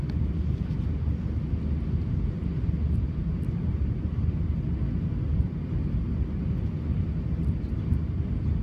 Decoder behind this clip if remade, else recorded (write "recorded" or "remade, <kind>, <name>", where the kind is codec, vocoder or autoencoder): recorded